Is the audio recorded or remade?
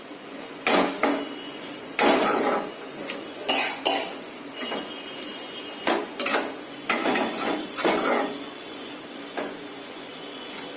remade